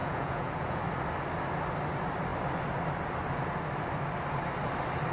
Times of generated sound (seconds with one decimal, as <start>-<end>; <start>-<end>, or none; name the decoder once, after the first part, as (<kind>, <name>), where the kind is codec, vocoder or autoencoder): 0.0-0.8 (vocoder, Vocos)